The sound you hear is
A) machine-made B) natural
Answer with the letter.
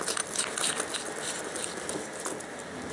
B